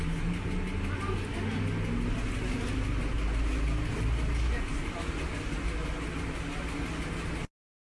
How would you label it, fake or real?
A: real